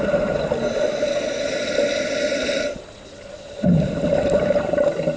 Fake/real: real